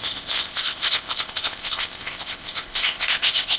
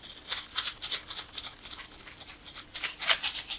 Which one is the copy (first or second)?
first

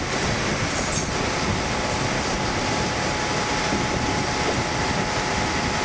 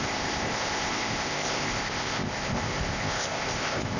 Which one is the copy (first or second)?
second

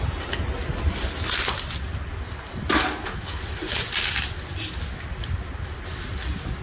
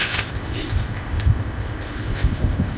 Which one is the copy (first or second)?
second